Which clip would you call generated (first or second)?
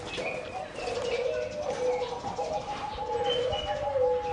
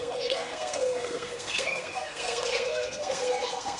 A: second